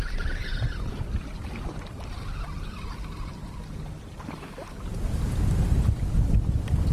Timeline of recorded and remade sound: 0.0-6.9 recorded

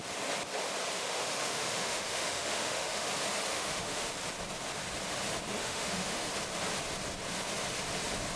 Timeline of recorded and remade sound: 0.0-1.0 recorded; 1.0-3.1 remade; 3.1-3.5 recorded; 3.5-4.1 remade; 4.1-5.6 recorded; 5.6-6.3 remade; 6.3-8.4 recorded

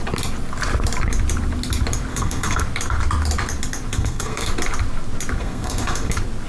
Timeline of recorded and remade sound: 0.0-2.1 recorded; 2.1-2.6 remade; 2.6-3.9 recorded; 3.9-4.5 remade; 4.5-5.4 recorded; 5.4-6.1 remade; 6.1-6.5 recorded

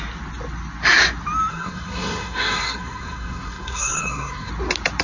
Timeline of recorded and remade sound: 0.0-1.5 recorded; 1.5-4.5 remade; 4.5-5.0 recorded